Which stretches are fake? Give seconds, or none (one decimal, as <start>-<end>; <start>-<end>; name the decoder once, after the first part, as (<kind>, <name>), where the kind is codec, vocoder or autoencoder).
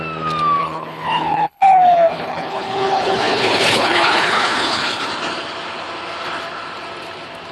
0.6-5.1 (codec, HILCodec)